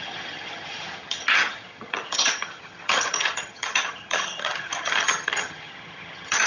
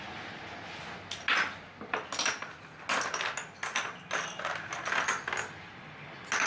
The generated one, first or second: first